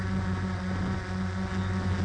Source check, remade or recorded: recorded